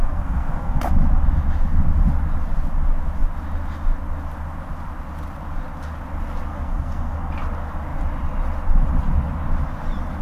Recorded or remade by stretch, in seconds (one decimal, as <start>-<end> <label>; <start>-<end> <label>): 0.0-0.8 remade; 0.8-6.5 recorded; 6.5-7.3 remade; 7.3-10.2 recorded